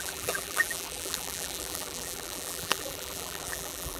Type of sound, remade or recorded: remade